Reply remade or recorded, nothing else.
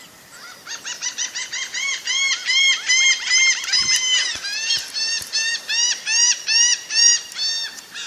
remade